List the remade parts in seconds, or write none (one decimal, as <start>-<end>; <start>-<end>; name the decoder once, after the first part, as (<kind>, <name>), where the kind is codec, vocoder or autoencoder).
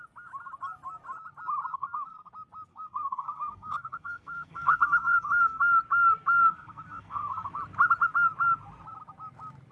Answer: 1.7-2.3 (codec, SNAC); 2.7-5.8; 6.4-7.5